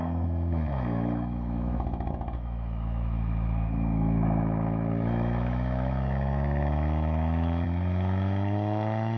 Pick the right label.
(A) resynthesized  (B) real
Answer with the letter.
A